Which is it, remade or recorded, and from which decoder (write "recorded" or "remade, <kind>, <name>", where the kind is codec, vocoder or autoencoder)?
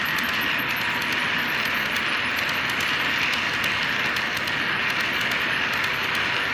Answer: recorded